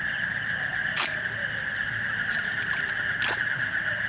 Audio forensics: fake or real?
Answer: real